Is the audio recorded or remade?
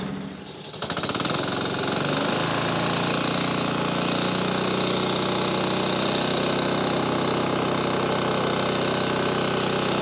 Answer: recorded